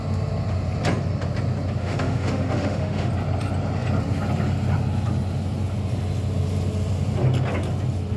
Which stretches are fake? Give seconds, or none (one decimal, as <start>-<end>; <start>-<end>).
1.8-3.1